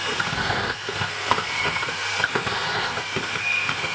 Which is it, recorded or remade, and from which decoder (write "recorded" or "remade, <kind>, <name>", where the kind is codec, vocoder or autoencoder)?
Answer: remade, codec, SNAC